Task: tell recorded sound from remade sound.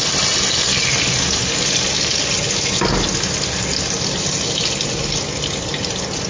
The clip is recorded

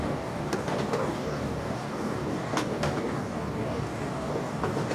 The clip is remade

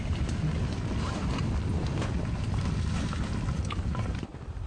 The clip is remade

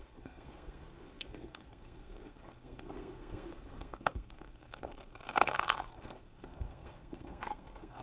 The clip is remade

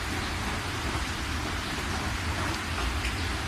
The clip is recorded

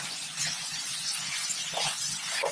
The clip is remade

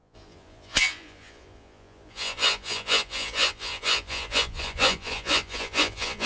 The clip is remade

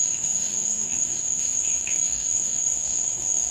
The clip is remade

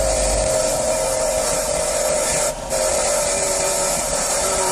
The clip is remade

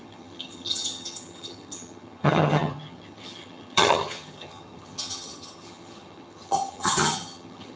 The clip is remade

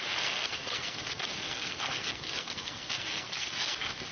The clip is remade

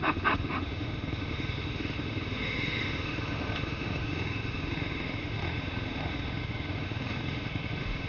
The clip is remade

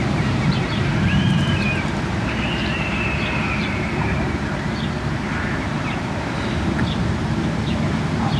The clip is remade